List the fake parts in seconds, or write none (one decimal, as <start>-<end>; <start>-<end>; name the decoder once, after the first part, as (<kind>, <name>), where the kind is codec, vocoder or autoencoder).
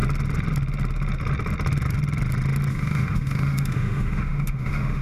2.7-5.0 (autoencoder, DAC-VAE)